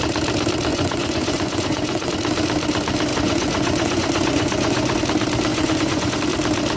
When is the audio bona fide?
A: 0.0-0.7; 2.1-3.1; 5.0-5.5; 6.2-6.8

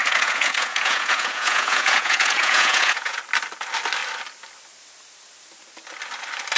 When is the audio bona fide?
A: 3.2-6.6

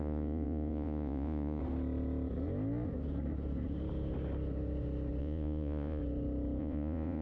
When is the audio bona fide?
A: 1.6-5.2; 6.0-6.6

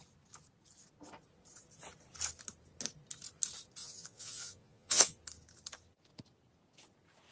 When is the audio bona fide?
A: 0.0-3.8; 5.2-7.3

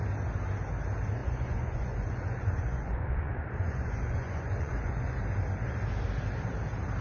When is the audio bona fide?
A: 0.0-1.2; 5.2-7.0

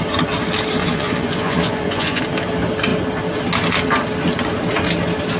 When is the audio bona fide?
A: 0.0-0.8; 2.2-5.4

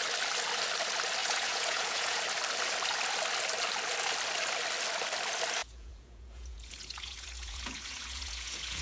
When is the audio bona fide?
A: 0.0-1.2; 2.2-5.6